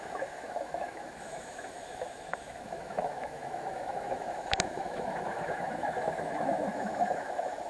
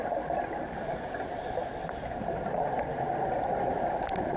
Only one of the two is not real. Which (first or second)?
first